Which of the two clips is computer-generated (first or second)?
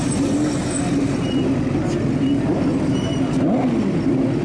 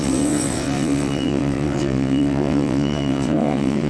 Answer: second